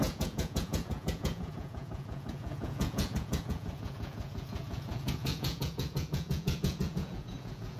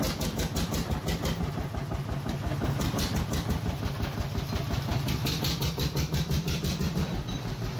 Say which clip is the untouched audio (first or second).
second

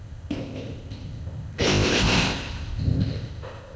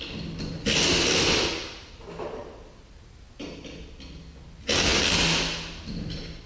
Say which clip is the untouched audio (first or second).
second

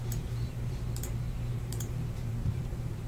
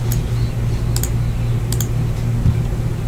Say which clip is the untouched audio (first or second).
second